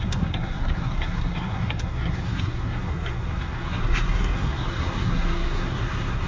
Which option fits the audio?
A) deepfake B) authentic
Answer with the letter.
A